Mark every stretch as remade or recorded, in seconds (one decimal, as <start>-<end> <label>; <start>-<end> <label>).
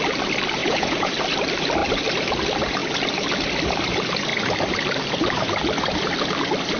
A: 0.0-0.6 recorded; 0.6-1.1 remade; 1.1-6.8 recorded